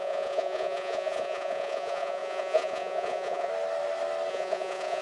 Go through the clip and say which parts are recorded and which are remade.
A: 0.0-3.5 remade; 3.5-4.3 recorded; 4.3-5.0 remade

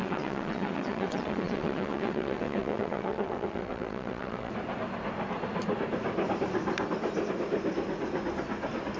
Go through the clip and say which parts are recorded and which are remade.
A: 0.0-4.5 remade; 4.5-9.0 recorded

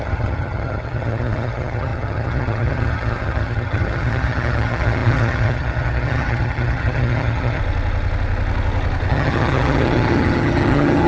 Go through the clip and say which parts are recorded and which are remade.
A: 0.0-7.6 remade; 7.6-9.1 recorded; 9.1-11.1 remade

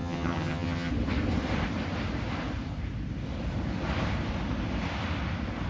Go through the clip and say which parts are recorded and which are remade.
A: 0.0-0.9 remade; 0.9-5.7 recorded